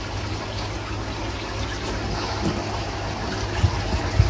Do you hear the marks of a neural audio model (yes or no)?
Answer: no